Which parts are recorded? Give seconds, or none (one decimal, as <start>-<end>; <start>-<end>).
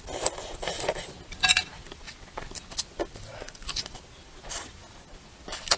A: 0.0-5.8